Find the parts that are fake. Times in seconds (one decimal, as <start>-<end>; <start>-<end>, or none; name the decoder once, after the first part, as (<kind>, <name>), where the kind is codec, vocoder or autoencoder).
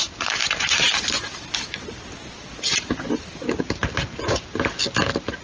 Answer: none